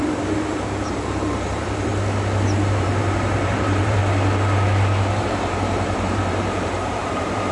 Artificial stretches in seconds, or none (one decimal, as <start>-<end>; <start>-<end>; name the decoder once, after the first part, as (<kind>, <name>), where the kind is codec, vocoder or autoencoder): 0.0-1.9 (vocoder, BigVGAN v2); 2.7-4.0; 5.2-7.5